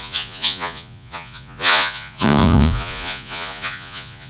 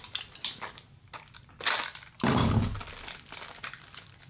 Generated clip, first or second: first